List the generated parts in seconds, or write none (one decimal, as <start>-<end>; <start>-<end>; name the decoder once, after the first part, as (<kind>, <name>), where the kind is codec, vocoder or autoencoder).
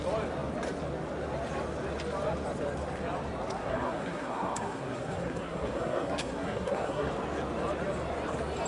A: 3.6-7.1 (codec, SNAC)